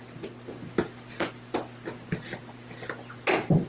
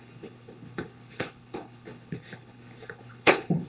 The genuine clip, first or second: first